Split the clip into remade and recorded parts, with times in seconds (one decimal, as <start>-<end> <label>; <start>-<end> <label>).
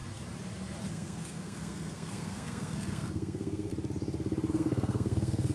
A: 0.0-0.9 recorded; 0.9-3.7 remade; 3.7-4.5 recorded; 4.5-5.5 remade